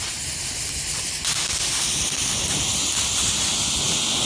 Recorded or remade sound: recorded